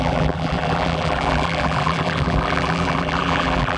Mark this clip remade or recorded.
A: remade